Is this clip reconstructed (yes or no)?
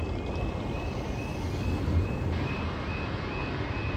no